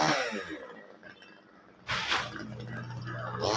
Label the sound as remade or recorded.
recorded